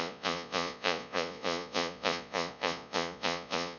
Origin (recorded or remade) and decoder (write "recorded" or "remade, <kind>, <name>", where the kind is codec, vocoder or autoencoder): remade, vocoder, Vocos